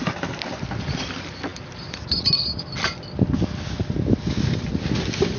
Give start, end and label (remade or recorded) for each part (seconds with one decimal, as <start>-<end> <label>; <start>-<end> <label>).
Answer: 0.0-5.4 recorded